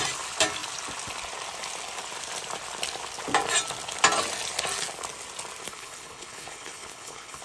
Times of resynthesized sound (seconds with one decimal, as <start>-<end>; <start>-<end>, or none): 5.7-7.4